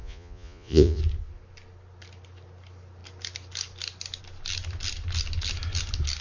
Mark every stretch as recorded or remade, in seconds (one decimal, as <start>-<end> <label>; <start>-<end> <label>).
0.0-1.0 remade; 1.0-6.2 recorded